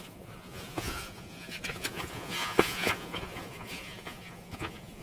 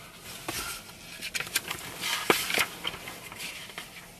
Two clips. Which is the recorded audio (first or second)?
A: second